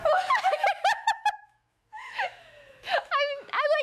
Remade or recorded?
remade